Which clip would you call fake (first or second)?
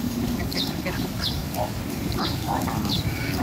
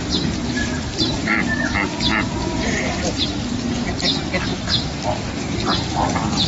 first